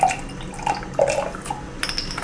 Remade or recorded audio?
recorded